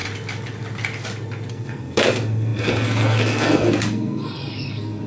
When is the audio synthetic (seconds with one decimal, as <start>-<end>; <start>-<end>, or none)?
1.5-5.1